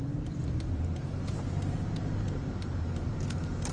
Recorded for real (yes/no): no